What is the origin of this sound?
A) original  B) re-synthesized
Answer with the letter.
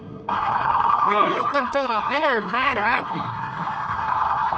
B